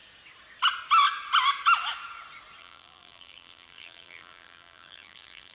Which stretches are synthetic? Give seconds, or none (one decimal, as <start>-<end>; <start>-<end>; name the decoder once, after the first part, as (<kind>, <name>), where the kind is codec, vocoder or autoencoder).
2.6-5.5 (vocoder, BigVGAN v2)